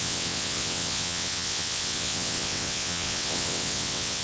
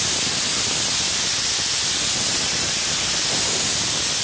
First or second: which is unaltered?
second